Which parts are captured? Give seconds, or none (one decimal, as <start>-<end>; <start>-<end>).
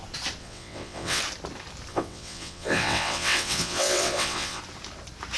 0.0-0.4; 1.2-1.9; 4.6-5.4